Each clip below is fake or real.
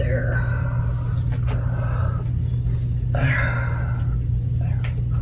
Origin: real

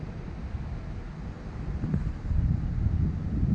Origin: real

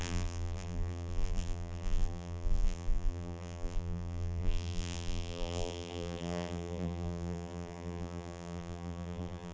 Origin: fake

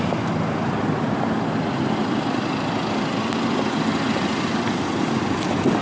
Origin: real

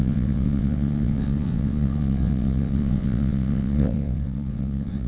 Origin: fake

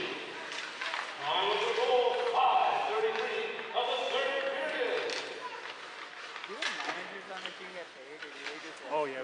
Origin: real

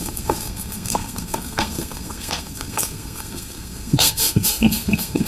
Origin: fake